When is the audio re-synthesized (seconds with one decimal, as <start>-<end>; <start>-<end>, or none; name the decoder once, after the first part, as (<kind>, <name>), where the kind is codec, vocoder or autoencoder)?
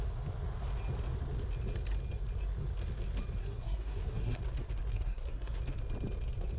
3.4-4.4 (codec, SNAC); 4.9-5.6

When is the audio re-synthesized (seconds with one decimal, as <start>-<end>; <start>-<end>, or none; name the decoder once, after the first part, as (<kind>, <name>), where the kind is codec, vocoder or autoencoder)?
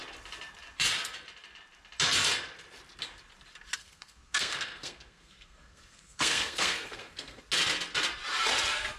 3.8-7.4 (codec, SNAC)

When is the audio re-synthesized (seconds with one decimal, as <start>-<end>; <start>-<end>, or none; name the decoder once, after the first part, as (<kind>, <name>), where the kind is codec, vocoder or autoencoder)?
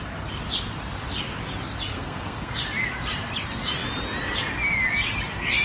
1.9-2.6 (codec, SNAC)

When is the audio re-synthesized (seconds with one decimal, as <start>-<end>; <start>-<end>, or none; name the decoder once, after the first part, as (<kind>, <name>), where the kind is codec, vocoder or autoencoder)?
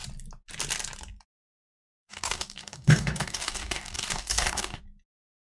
1.5-4.8 (codec, DAC)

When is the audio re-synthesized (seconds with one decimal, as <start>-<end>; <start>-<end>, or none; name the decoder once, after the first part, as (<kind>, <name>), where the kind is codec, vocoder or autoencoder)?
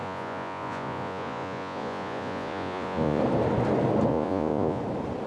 0.0-3.2 (vocoder, Vocos); 4.1-4.8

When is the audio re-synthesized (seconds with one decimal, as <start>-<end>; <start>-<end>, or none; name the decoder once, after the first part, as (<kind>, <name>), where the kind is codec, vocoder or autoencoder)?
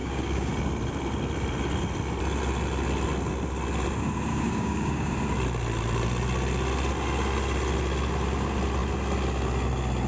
0.0-0.5 (codec, DAC); 4.3-5.1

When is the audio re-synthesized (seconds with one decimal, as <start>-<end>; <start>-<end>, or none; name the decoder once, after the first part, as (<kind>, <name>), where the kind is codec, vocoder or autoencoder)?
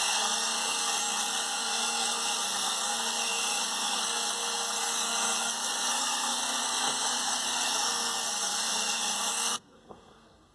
0.0-10.5 (codec, SNAC)